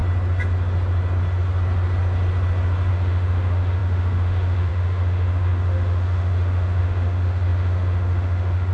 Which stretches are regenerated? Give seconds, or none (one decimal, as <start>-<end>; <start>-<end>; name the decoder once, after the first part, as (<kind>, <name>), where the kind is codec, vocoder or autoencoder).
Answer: 2.9-8.7 (autoencoder, DAC-VAE)